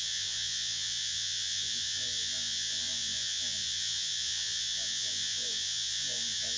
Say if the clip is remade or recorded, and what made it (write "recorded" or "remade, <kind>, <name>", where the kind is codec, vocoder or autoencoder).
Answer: remade, vocoder, Vocos